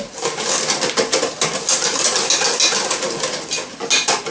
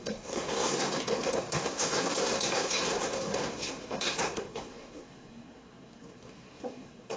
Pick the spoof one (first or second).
second